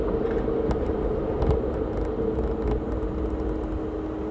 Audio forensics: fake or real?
real